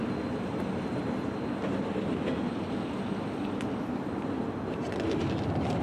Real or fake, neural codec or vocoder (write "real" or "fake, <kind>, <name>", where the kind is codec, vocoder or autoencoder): real